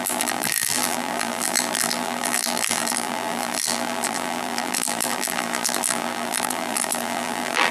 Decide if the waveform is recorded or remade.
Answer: remade